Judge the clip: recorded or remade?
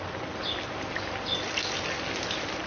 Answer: recorded